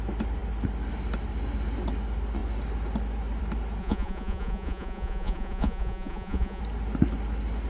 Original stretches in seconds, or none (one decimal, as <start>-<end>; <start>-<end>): 0.0-3.8; 6.6-7.7